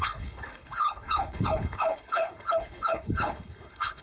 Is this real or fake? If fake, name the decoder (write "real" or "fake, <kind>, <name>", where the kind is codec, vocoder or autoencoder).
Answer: fake, codec, HILCodec